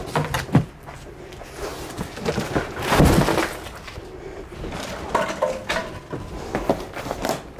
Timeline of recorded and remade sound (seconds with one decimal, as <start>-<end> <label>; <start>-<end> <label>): 0.0-1.7 recorded; 1.7-2.8 remade; 2.8-7.6 recorded

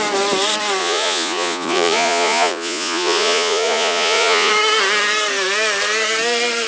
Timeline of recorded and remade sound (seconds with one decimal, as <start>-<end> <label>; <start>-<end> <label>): 0.0-0.8 recorded; 0.8-4.5 remade; 4.5-6.7 recorded

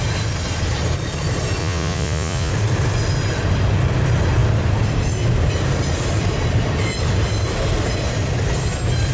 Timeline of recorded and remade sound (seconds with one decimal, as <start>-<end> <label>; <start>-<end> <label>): 0.0-1.6 recorded; 1.6-2.5 remade; 2.5-9.1 recorded

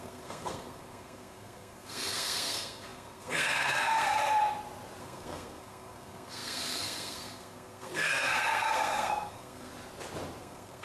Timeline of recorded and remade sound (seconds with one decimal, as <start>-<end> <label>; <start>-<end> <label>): 0.0-4.2 remade; 4.2-5.0 recorded; 5.0-9.7 remade; 9.7-10.4 recorded; 10.4-10.8 remade

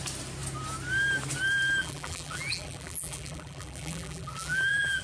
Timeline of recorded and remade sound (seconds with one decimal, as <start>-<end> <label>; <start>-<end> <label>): 0.0-1.8 recorded; 1.8-5.0 remade

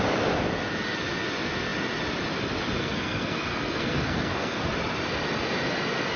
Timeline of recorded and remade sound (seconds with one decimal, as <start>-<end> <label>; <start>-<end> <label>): 0.0-2.8 recorded; 2.8-4.6 remade; 4.6-6.2 recorded

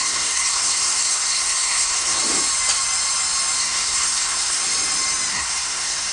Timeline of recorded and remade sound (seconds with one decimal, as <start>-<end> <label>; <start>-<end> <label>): 0.0-2.2 remade; 2.2-3.6 recorded; 3.6-4.6 remade; 4.6-5.3 recorded; 5.3-6.1 remade

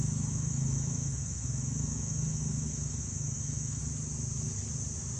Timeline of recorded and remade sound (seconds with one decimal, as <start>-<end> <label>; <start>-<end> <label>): 0.0-3.8 remade; 3.8-5.2 recorded